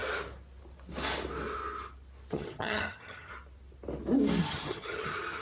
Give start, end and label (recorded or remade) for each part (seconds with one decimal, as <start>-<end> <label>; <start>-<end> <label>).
0.0-2.3 recorded; 2.3-3.3 remade; 3.3-4.4 recorded; 4.4-5.4 remade

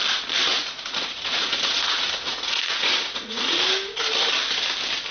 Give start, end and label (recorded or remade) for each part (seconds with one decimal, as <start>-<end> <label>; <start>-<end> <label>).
0.0-0.5 recorded; 0.5-3.6 remade; 3.6-5.1 recorded

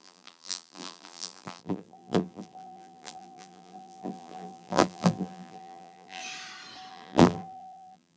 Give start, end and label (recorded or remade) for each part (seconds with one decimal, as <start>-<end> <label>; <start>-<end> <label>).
0.0-6.2 remade; 6.2-6.9 recorded; 6.9-8.2 remade

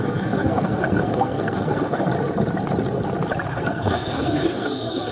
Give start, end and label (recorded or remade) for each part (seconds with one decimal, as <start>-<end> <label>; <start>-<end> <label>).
0.0-2.1 remade; 2.1-3.5 recorded; 3.5-5.1 remade

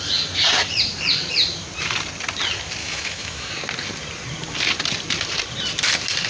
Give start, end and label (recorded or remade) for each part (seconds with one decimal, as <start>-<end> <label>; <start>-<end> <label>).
0.0-2.8 recorded; 2.8-3.5 remade; 3.5-6.3 recorded